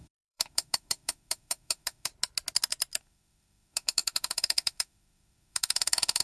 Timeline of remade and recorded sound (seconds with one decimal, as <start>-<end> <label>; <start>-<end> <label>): 0.0-2.1 remade; 2.1-3.0 recorded; 3.0-6.2 remade